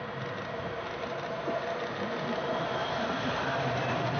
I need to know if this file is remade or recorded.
recorded